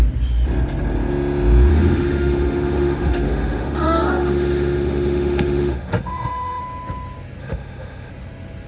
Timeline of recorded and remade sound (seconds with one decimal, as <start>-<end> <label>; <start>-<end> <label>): 0.0-1.7 recorded; 1.7-6.6 remade; 6.6-7.4 recorded; 7.4-8.1 remade; 8.1-8.7 recorded